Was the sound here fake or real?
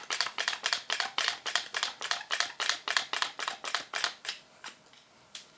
real